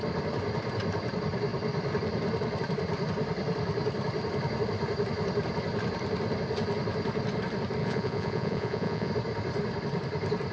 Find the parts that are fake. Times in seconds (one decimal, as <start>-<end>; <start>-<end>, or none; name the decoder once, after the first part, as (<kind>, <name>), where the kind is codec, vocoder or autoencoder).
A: 7.8-9.1 (vocoder, Vocos)